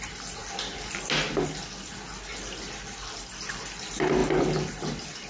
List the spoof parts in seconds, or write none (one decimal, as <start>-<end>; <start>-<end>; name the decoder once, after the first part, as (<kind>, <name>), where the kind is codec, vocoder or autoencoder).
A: none